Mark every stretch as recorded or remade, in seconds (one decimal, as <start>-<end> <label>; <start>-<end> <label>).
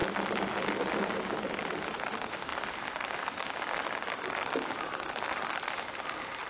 0.0-6.5 recorded